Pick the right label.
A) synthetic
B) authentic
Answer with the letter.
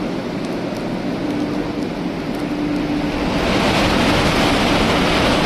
B